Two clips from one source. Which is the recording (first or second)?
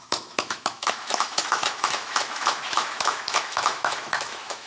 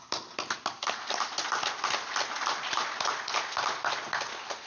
second